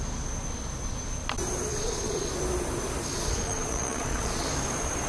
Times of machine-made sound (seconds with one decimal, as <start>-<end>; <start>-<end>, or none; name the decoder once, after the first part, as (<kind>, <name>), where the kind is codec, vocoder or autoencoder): 1.7-2.3 (vocoder, Vocos); 3.1-4.5